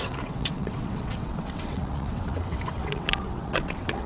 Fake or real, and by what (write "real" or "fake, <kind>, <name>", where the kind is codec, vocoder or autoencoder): fake, vocoder, WaveNeXt